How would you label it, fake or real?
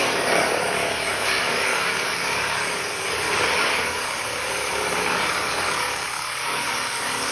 fake